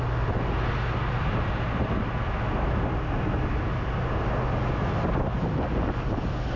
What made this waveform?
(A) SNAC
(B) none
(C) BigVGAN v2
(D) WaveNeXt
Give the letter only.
B